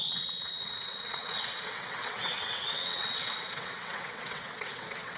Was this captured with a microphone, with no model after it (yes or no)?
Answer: no